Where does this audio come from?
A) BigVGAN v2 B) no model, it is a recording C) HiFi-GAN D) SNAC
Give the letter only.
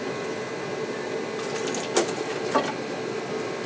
B